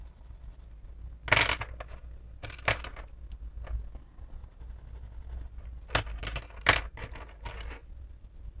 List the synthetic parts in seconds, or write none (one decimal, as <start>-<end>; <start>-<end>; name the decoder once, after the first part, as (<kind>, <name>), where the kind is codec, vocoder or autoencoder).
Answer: 7.8-8.6 (vocoder, BigVGAN v2)